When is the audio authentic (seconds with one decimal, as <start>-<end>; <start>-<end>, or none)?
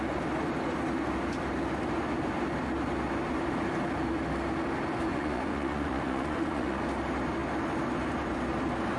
0.0-5.1; 6.8-9.0